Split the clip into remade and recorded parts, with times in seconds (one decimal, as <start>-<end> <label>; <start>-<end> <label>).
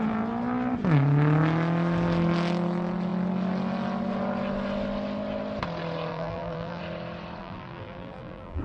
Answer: 0.0-6.1 recorded; 6.1-6.8 remade; 6.8-7.4 recorded; 7.4-8.6 remade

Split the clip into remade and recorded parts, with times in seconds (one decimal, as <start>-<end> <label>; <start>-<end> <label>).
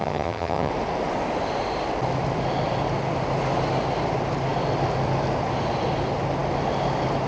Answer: 0.0-0.7 remade; 0.7-7.3 recorded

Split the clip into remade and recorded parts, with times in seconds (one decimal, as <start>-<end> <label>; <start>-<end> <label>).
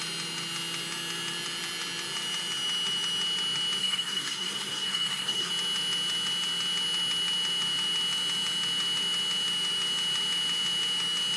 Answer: 0.0-3.8 recorded; 3.8-5.5 remade; 5.5-11.4 recorded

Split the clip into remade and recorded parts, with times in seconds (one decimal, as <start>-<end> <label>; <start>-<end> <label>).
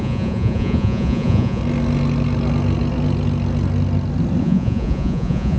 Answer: 0.0-1.6 remade; 1.6-4.4 recorded; 4.4-5.6 remade